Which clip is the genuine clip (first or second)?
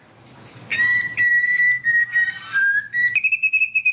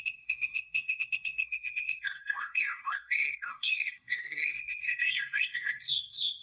first